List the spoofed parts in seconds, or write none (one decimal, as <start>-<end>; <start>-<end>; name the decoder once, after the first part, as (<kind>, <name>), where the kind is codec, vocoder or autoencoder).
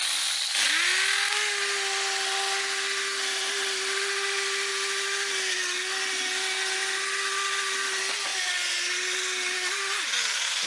none